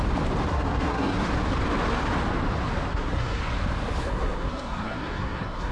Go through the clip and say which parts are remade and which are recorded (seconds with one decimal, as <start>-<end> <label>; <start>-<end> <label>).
0.0-0.5 recorded; 0.5-1.3 remade; 1.3-2.9 recorded; 2.9-3.4 remade; 3.4-4.0 recorded; 4.0-5.7 remade